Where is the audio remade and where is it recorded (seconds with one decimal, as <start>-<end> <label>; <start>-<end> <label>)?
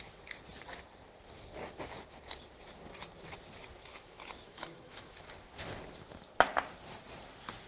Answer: 0.0-3.9 recorded; 3.9-5.3 remade; 5.3-7.7 recorded